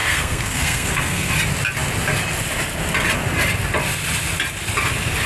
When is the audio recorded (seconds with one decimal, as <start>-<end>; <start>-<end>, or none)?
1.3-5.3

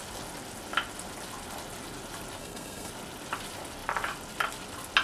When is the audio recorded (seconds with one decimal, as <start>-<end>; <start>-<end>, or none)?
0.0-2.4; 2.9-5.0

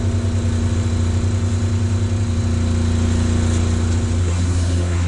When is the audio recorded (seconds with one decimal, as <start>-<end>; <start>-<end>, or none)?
0.0-4.2

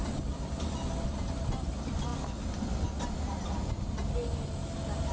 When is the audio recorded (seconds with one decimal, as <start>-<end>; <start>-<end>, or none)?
0.0-5.1

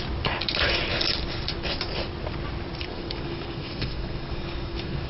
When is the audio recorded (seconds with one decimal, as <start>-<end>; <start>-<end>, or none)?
0.0-2.9

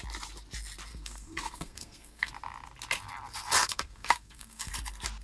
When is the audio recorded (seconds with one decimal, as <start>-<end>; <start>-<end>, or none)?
0.0-0.9; 2.3-3.6; 4.7-5.2

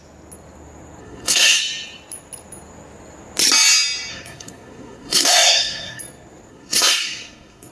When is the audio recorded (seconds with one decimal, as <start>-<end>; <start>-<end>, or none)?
0.0-1.0; 1.6-4.1; 6.0-6.5

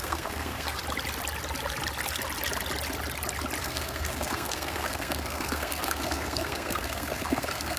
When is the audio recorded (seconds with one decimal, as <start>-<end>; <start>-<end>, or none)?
0.8-3.6